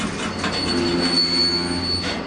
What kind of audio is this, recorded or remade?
recorded